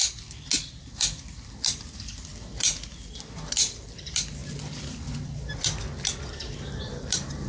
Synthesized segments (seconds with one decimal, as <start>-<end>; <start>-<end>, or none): 0.7-4.4; 6.8-7.5